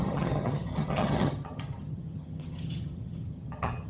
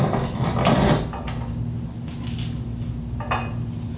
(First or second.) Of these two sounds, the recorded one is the second